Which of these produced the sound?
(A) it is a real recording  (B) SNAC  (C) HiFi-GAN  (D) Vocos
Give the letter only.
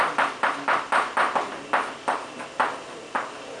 A